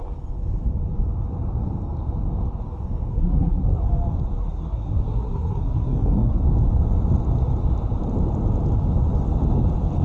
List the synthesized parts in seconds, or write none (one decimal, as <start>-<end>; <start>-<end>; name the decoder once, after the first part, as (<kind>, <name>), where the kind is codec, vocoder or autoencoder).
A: 3.1-3.8 (codec, SNAC); 4.4-6.4